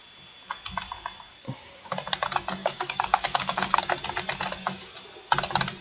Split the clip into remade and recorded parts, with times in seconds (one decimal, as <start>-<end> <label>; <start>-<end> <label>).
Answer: 0.0-1.4 recorded; 1.4-1.9 remade; 1.9-2.6 recorded; 2.6-3.8 remade; 3.8-5.8 recorded